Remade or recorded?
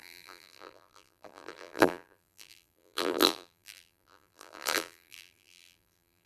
remade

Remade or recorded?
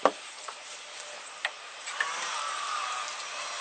remade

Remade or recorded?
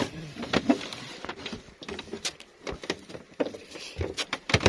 remade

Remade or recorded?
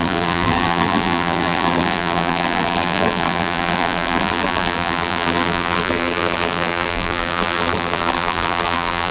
remade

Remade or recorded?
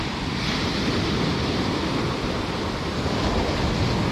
recorded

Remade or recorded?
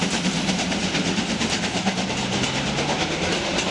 recorded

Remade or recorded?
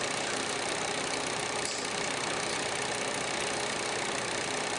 recorded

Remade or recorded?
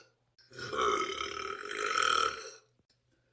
recorded